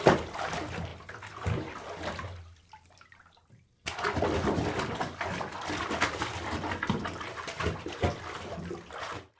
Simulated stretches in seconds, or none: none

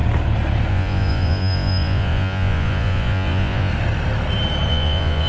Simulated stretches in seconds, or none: 0.7-3.7 (vocoder, Vocos); 4.7-5.3

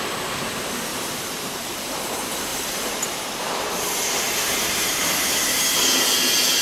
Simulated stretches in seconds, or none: 0.9-2.0 (vocoder, BigVGAN v2); 2.5-5.1

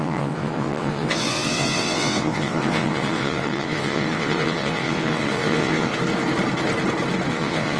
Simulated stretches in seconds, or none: 0.0-5.9 (vocoder, WaveNeXt); 7.3-7.8

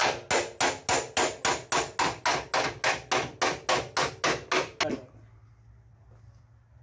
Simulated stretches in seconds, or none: none

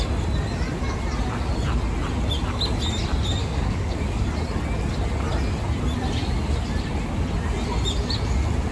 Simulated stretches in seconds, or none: 3.4-4.2 (codec, DAC)